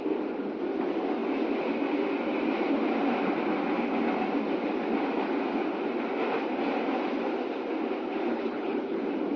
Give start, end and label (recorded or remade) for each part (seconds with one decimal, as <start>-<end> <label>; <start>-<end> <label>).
0.0-8.3 recorded; 8.3-9.0 remade; 9.0-9.4 recorded